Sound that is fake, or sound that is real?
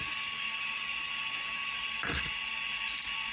real